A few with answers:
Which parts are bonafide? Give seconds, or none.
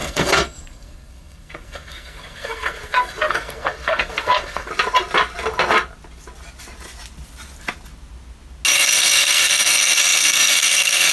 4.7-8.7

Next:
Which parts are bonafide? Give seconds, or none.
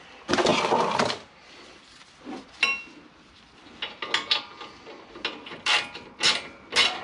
0.0-7.0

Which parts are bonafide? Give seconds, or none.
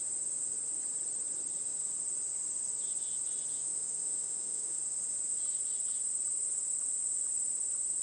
0.0-3.5; 4.8-8.0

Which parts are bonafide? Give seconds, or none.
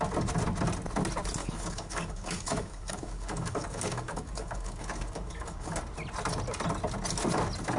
0.0-1.4; 5.8-7.8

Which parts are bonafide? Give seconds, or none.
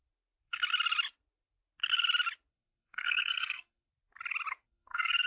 0.0-2.5; 3.9-4.6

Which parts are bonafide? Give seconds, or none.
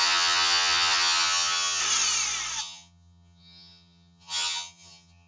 1.8-2.6